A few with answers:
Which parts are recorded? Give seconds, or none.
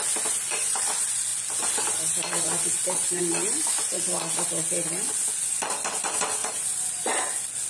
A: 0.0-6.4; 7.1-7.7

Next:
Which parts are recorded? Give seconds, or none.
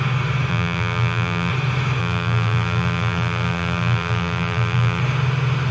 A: 0.0-0.5; 1.5-2.0; 5.0-5.7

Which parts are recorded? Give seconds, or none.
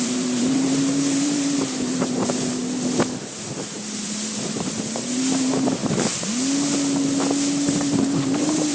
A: 2.6-3.5; 5.8-7.7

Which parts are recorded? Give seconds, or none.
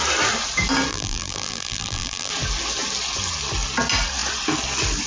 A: 0.0-0.9; 2.3-5.1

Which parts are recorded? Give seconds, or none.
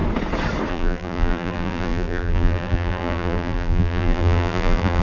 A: 0.0-0.7